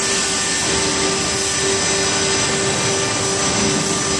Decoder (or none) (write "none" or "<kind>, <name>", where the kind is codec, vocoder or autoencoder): none